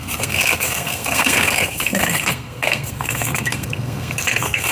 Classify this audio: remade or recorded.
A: remade